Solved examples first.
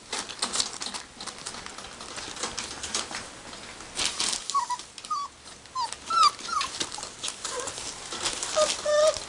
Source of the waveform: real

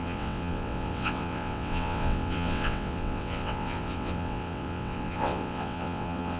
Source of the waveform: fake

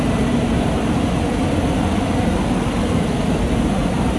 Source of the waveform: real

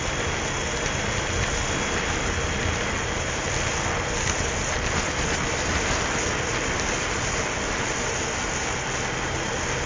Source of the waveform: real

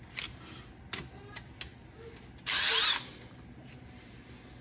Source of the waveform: real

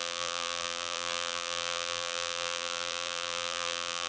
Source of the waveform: fake